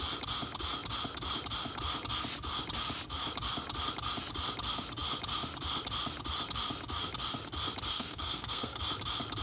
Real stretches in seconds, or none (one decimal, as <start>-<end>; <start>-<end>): 0.0-7.9; 8.8-9.4